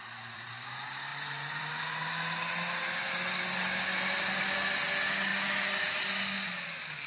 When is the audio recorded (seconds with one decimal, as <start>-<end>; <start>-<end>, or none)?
0.0-7.1